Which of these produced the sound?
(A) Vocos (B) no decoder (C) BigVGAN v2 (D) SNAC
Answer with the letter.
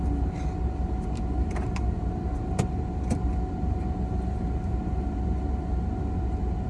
B